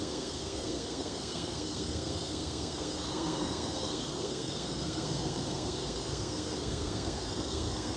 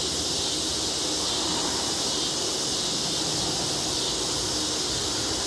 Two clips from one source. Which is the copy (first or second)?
first